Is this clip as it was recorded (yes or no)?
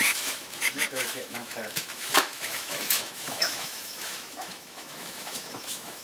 no